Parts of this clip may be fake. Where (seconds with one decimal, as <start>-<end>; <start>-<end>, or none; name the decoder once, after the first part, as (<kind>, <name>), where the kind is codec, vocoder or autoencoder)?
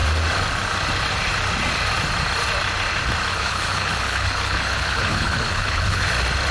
3.3-6.0 (codec, HILCodec)